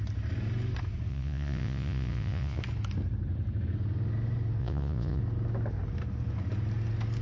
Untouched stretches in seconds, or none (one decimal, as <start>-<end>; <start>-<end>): 0.0-1.1; 2.6-4.6; 5.2-7.2